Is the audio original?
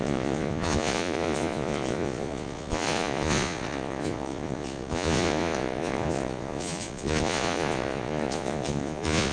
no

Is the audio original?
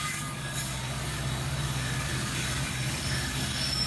no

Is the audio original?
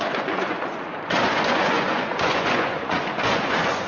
no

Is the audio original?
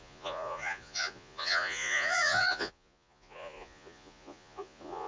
no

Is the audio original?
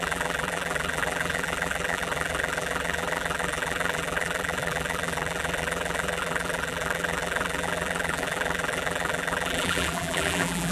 no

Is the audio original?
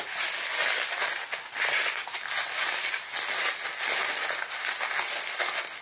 yes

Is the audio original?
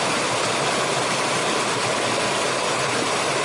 yes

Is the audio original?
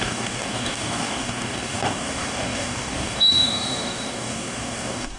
no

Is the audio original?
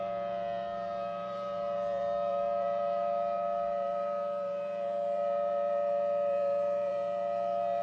no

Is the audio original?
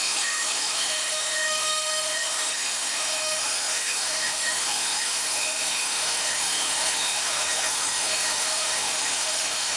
no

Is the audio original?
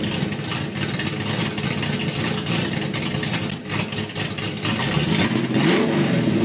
yes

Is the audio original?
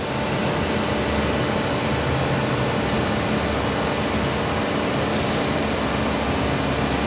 yes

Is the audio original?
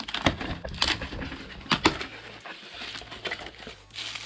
yes